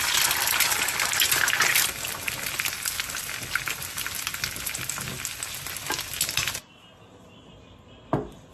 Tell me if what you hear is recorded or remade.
recorded